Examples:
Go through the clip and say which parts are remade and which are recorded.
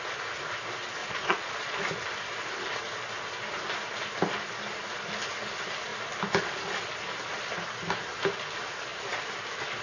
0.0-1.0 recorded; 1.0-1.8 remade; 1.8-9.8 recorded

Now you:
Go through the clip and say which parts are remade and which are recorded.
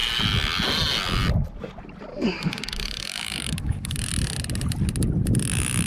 0.0-2.1 recorded; 2.1-4.1 remade; 4.1-5.9 recorded